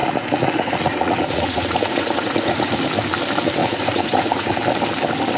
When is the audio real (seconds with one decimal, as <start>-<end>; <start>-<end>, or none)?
2.7-3.6; 4.6-5.4